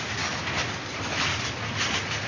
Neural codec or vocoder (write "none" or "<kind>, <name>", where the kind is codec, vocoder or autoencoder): none